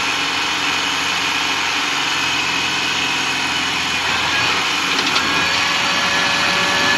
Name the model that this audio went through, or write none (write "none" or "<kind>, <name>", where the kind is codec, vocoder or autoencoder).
none